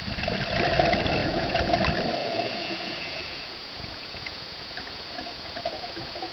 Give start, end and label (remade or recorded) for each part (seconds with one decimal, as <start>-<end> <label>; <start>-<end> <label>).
0.0-1.2 recorded; 1.2-1.8 remade; 1.8-2.2 recorded; 2.2-6.3 remade